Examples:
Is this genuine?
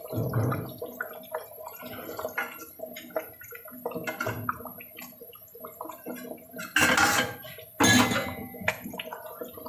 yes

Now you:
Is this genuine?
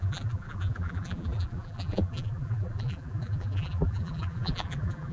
no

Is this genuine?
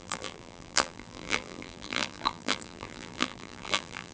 no